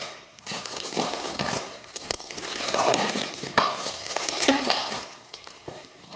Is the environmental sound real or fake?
fake